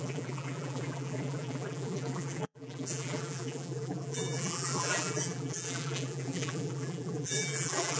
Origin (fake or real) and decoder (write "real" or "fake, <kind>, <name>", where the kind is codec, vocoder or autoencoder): fake, vocoder, BigVGAN v2